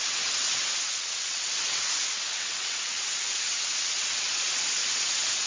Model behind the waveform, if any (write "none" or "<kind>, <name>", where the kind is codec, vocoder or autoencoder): vocoder, WaveNeXt